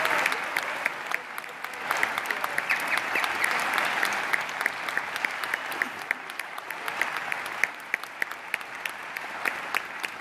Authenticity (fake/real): real